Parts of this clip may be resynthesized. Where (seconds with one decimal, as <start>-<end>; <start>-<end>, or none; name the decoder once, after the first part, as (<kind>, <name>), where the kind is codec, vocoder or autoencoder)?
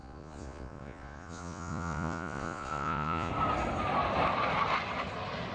0.0-3.3 (vocoder, Vocos)